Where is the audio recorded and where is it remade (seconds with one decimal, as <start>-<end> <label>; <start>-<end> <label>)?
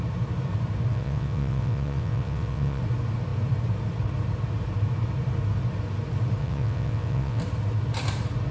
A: 0.0-0.9 recorded; 0.9-2.8 remade; 2.8-6.4 recorded; 6.4-7.4 remade; 7.4-8.5 recorded